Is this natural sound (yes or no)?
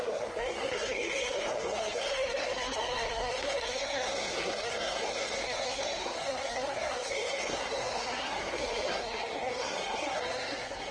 no